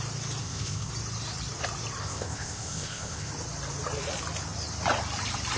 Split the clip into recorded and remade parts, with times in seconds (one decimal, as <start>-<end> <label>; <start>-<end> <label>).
0.0-0.4 recorded; 0.4-0.9 remade; 0.9-2.0 recorded; 2.0-3.3 remade; 3.3-5.6 recorded